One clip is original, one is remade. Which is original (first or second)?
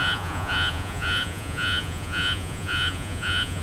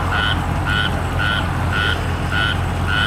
second